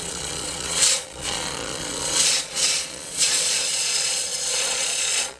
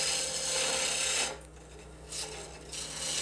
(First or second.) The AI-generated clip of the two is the first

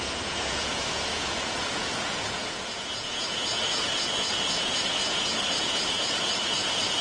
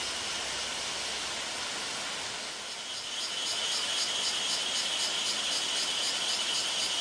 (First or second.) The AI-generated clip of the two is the first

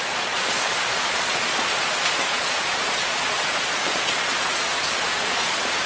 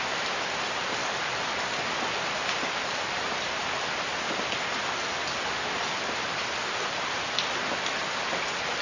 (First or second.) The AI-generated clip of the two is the first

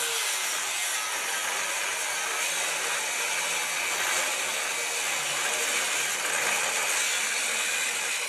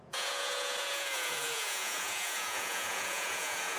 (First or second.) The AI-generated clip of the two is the second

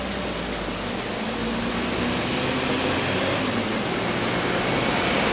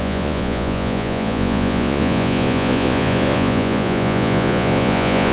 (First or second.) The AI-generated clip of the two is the second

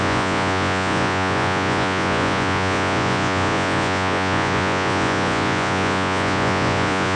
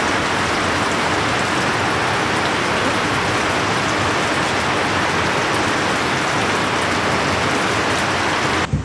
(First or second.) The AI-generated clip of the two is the first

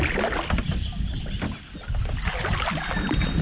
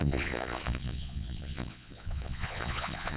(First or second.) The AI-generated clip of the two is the second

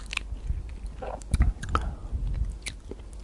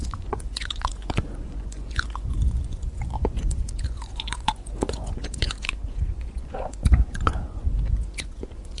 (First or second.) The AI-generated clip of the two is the second